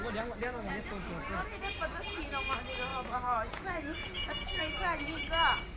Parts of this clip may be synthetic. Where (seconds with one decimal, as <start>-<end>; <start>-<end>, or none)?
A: 2.9-4.6